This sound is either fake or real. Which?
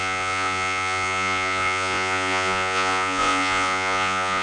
fake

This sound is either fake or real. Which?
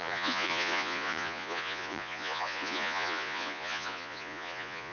fake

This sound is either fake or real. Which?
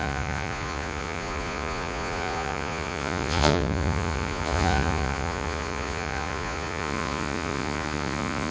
fake